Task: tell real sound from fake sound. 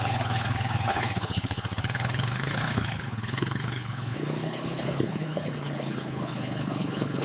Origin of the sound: fake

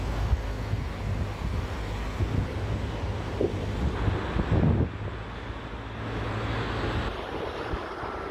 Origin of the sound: real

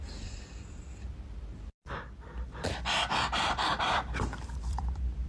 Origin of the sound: fake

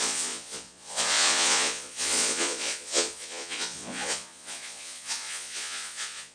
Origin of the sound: fake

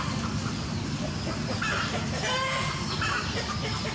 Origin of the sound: real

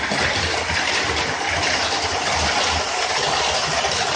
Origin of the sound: real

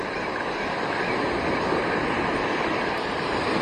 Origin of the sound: real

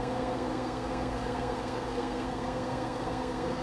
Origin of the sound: fake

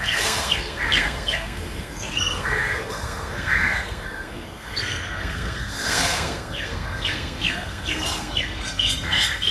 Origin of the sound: fake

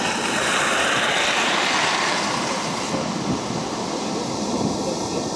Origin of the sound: real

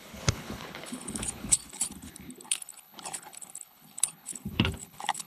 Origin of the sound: fake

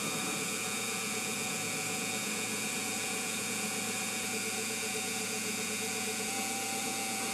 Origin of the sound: fake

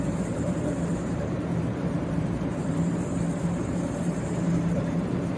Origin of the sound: fake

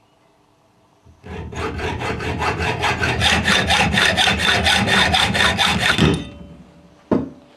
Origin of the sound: real